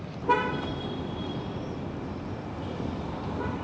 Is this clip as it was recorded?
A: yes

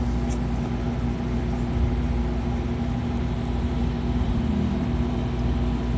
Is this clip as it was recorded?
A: yes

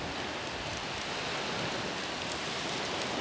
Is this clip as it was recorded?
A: yes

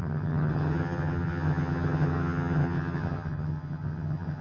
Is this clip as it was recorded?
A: no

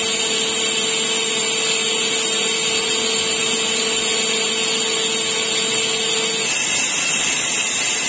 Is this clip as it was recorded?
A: yes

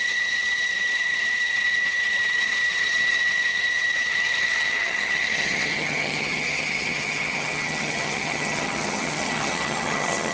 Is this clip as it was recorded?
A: no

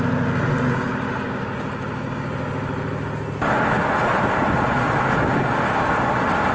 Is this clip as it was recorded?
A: yes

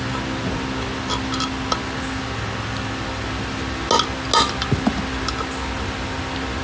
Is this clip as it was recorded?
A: yes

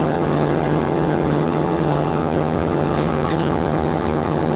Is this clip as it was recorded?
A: no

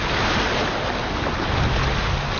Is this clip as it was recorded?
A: yes